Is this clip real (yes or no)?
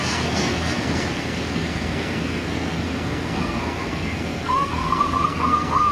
no